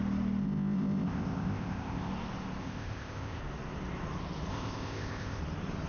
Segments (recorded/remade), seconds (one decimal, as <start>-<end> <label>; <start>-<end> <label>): 0.0-0.4 recorded; 0.4-2.1 remade; 2.1-2.6 recorded; 2.6-3.4 remade; 3.4-4.5 recorded; 4.5-5.4 remade; 5.4-5.9 recorded